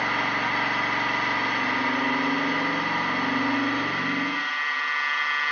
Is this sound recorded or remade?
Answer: recorded